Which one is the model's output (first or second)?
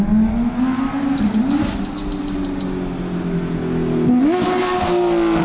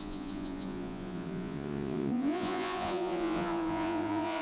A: second